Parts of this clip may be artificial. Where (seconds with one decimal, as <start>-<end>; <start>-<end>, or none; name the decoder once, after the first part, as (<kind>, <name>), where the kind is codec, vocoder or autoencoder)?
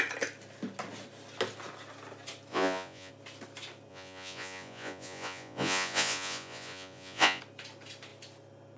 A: 2.5-3.1 (vocoder, Vocos); 3.9-7.4